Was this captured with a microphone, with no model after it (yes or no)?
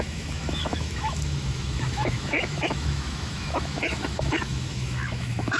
no